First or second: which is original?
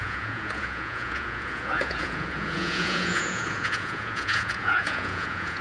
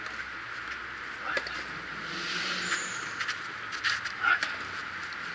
second